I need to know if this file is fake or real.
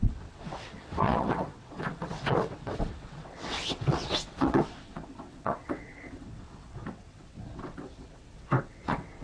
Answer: fake